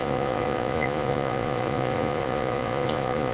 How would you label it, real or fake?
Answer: fake